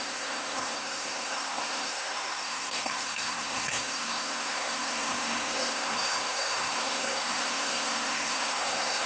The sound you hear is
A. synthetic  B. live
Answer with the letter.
A